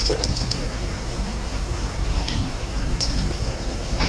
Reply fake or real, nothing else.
fake